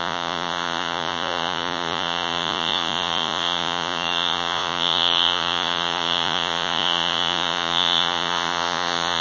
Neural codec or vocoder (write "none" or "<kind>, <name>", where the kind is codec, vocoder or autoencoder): vocoder, Vocos